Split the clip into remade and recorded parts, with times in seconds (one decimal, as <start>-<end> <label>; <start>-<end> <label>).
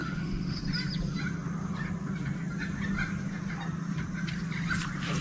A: 0.0-0.6 remade; 0.6-5.2 recorded